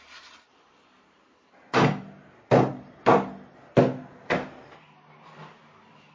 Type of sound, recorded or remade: recorded